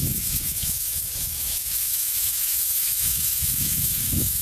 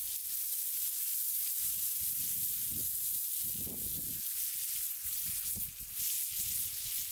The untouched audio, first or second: second